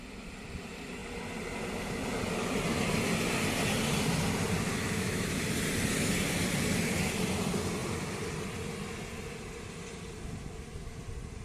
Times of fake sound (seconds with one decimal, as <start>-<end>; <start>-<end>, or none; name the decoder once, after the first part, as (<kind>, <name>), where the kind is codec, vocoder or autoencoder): 4.7-5.4 (autoencoder, DAC-VAE)